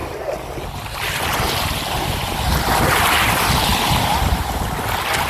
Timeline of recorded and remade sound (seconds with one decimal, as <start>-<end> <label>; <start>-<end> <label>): 0.0-5.3 recorded